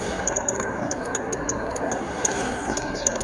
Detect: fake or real fake